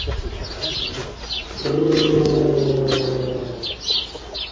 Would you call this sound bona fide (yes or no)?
yes